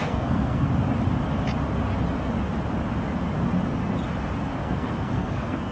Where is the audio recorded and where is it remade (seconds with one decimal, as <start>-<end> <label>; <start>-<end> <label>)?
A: 0.0-0.7 remade; 0.7-4.6 recorded; 4.6-5.7 remade